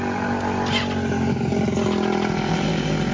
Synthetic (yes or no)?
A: no